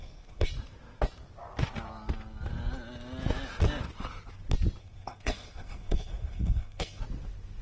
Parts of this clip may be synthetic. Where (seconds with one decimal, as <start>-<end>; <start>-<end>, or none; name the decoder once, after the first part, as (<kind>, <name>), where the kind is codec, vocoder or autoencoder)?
0.0-0.5 (codec, SNAC); 4.8-7.0